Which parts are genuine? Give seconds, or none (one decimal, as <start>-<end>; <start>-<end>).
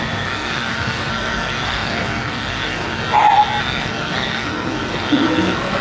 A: 3.0-3.6